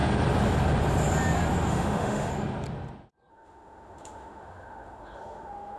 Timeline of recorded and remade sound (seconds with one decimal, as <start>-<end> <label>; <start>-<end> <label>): 0.0-1.7 recorded; 1.7-2.3 remade; 2.3-3.3 recorded; 3.3-5.8 remade